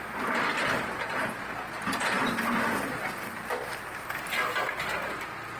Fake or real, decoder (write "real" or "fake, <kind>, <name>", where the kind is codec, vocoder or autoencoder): real